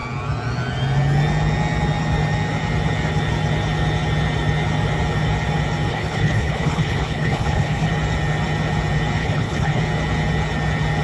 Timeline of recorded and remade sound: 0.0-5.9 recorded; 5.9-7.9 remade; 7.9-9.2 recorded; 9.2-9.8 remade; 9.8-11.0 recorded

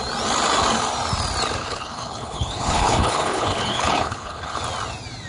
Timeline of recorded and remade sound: 0.0-1.6 recorded; 1.6-4.6 remade; 4.6-5.3 recorded

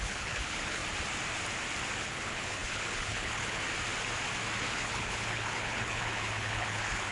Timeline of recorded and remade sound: 0.0-0.8 remade; 0.8-2.0 recorded; 2.0-3.6 remade; 3.6-4.6 recorded; 4.6-7.1 remade

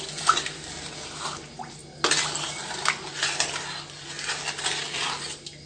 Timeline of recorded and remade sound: 0.0-5.7 recorded

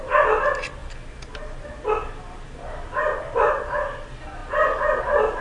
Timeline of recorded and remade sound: 0.0-5.4 recorded

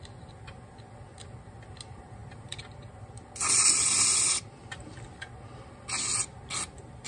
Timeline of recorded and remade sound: 0.0-7.1 recorded

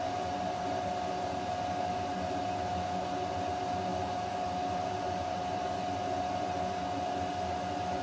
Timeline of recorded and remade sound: 0.0-8.0 recorded

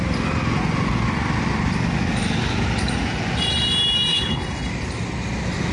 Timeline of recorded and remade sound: 0.0-4.1 recorded; 4.1-4.7 remade; 4.7-5.7 recorded